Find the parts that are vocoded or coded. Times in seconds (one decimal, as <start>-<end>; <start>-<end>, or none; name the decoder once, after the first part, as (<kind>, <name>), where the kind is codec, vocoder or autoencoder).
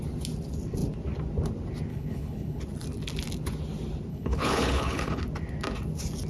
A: 1.9-2.6 (codec, HILCodec); 4.1-5.2